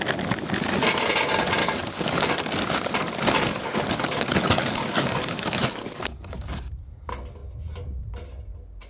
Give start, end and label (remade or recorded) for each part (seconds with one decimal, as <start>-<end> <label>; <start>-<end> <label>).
0.0-1.6 recorded; 1.6-2.3 remade; 2.3-3.5 recorded; 3.5-6.7 remade; 6.7-8.9 recorded